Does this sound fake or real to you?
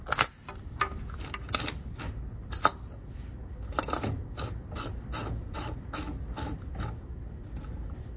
real